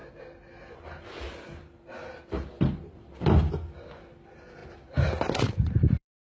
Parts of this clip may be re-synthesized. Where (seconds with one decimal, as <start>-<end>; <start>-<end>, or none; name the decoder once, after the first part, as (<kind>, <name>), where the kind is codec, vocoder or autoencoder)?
none